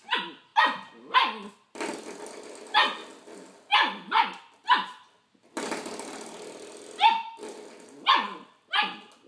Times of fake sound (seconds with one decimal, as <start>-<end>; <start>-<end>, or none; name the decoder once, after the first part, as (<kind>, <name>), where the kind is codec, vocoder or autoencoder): none